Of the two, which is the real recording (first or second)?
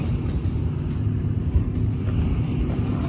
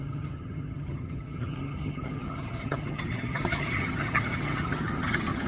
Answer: first